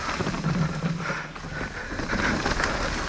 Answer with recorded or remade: recorded